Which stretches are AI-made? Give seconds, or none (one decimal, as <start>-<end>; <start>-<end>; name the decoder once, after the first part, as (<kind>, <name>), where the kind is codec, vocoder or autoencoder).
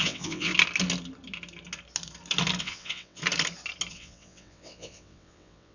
0.0-0.5 (vocoder, WaveNeXt); 2.6-3.2; 3.9-5.7